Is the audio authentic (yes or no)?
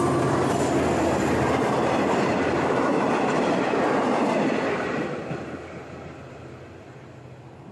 yes